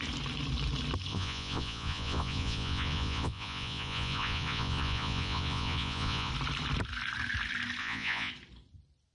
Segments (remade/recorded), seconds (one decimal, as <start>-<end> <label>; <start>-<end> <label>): 0.0-1.1 recorded; 1.1-6.3 remade; 6.3-7.8 recorded; 7.8-8.3 remade; 8.3-9.1 recorded